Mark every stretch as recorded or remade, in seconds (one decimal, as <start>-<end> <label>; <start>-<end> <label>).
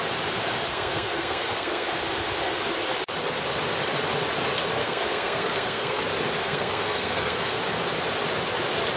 0.0-0.7 recorded; 0.7-1.9 remade; 1.9-4.8 recorded; 4.8-6.0 remade; 6.0-6.4 recorded; 6.4-7.6 remade; 7.6-9.0 recorded